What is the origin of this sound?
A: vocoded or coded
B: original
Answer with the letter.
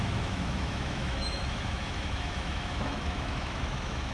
A